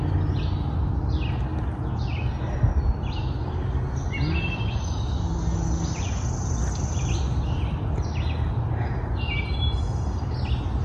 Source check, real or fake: real